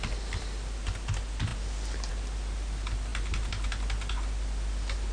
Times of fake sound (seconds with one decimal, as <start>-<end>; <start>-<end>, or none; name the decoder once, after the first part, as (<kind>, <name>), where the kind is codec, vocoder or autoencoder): none